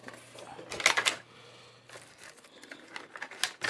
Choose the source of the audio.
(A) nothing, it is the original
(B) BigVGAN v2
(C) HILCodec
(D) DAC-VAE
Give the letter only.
A